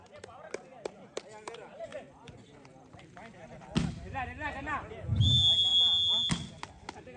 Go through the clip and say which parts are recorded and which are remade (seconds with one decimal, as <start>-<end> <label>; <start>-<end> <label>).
0.0-1.9 recorded; 1.9-2.7 remade; 2.7-4.6 recorded; 4.6-5.2 remade; 5.2-7.2 recorded